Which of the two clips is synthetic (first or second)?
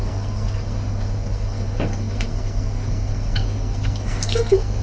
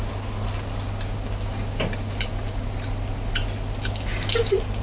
first